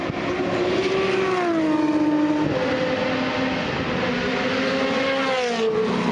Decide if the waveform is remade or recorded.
recorded